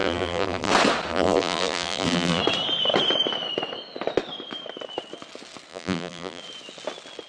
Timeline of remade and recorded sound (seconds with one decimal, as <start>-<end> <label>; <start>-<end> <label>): 0.0-0.7 remade; 0.7-1.1 recorded; 1.1-2.4 remade; 2.4-5.7 recorded; 5.7-6.4 remade; 6.4-7.3 recorded